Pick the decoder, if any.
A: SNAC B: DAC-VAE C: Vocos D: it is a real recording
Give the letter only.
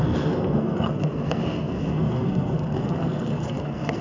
A